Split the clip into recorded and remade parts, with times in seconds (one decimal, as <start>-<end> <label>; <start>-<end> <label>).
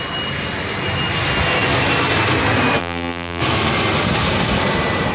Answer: 0.0-2.8 recorded; 2.8-3.4 remade; 3.4-5.1 recorded